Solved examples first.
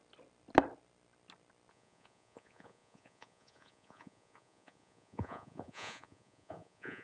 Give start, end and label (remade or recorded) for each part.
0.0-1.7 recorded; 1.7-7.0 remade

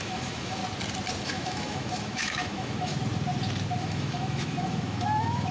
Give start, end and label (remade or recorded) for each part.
0.0-0.6 remade; 0.6-1.2 recorded; 1.2-2.9 remade; 2.9-3.8 recorded; 3.8-5.5 remade

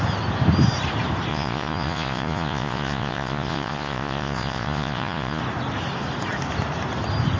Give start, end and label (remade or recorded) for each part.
0.0-1.3 recorded; 1.3-5.4 remade; 5.4-7.4 recorded

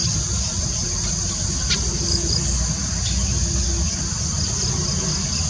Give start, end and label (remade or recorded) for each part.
0.0-0.6 remade; 0.6-2.8 recorded; 2.8-3.9 remade; 3.9-5.5 recorded

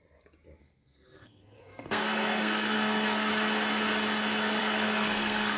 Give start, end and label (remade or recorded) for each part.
0.0-0.6 recorded; 0.6-3.3 remade; 3.3-4.6 recorded; 4.6-5.6 remade

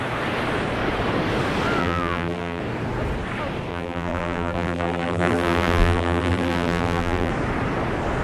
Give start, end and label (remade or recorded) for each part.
0.0-1.8 recorded; 1.8-2.6 remade; 2.6-3.7 recorded; 3.7-7.3 remade; 7.3-8.2 recorded

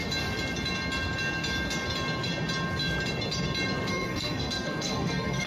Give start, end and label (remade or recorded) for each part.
0.0-3.9 recorded; 3.9-5.5 remade

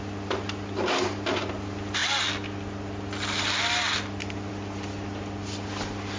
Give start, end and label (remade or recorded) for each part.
0.0-6.2 recorded